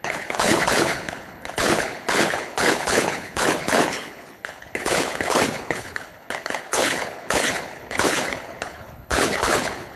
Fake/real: fake